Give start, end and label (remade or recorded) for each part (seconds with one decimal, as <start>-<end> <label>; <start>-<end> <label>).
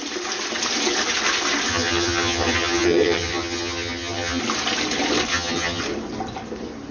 0.0-1.7 recorded; 1.7-4.4 remade; 4.4-5.3 recorded; 5.3-5.8 remade; 5.8-6.9 recorded